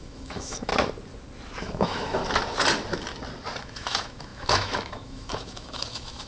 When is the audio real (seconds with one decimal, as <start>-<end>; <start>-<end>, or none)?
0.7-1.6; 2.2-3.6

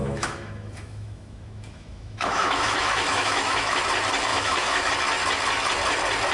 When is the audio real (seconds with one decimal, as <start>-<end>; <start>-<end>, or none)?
3.8-4.3; 4.9-6.3

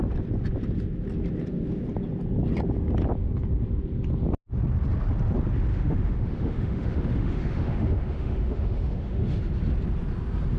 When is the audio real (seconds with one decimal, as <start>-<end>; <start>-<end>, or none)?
0.0-5.7; 9.4-10.6